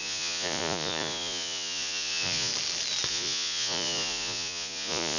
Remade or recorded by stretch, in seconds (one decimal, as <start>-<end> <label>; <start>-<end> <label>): 0.0-2.5 remade; 2.5-3.1 recorded; 3.1-5.2 remade